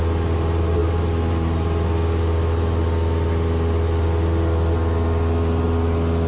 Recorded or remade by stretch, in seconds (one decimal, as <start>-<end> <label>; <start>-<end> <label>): 0.0-6.3 recorded